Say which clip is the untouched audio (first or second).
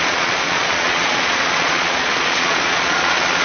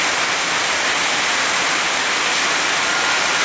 second